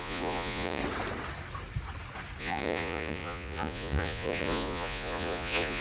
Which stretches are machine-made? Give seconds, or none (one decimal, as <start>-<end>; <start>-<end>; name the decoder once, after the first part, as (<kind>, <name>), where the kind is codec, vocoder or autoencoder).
0.0-0.8 (vocoder, Vocos); 2.4-5.8